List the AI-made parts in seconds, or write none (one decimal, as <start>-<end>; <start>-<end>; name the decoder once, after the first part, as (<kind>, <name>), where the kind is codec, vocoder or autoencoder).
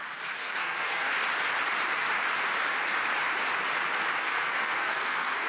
0.4-1.1 (codec, SNAC); 4.2-5.5